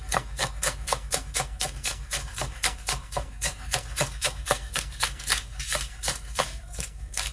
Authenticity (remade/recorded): remade